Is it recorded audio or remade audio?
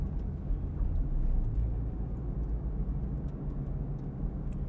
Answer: recorded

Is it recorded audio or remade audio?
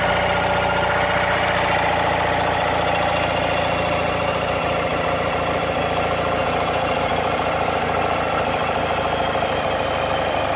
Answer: recorded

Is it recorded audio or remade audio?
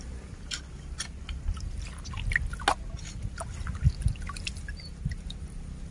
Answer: recorded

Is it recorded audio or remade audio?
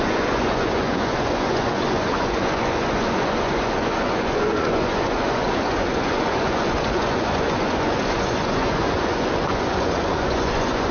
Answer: remade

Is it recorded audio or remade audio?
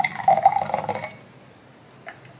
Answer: recorded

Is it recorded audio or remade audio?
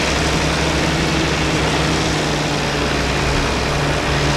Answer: recorded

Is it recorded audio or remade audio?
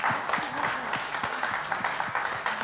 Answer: remade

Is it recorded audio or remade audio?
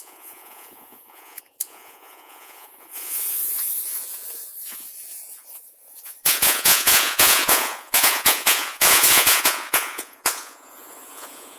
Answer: remade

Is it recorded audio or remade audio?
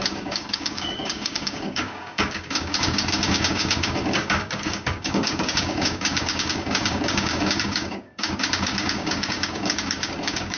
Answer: remade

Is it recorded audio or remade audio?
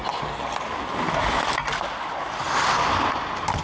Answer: recorded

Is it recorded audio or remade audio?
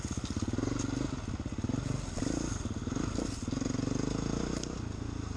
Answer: recorded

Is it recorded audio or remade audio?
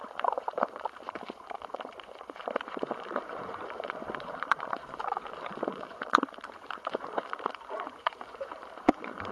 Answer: remade